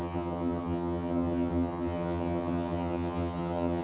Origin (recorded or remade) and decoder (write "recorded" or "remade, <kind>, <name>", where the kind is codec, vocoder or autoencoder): remade, vocoder, HiFi-GAN